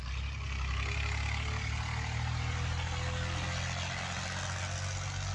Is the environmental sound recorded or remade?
recorded